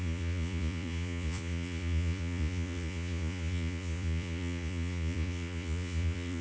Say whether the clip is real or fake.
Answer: fake